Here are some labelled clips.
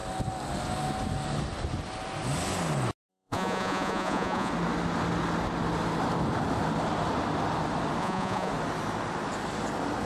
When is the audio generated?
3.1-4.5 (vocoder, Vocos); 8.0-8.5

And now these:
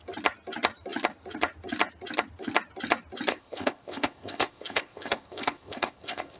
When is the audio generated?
3.3-6.4 (codec, ZipCodec)

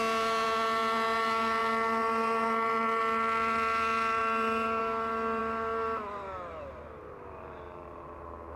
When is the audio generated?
none

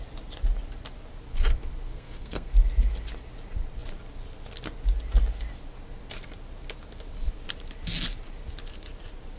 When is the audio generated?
1.9-2.5 (codec, SNAC)

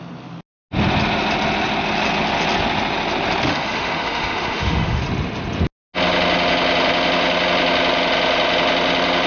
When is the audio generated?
3.5-5.0 (autoencoder, DAC-VAE)